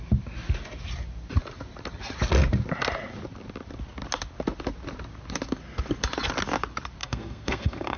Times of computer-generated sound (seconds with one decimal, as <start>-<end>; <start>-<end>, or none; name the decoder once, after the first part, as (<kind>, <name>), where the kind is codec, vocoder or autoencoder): 7.0-8.0 (codec, SNAC)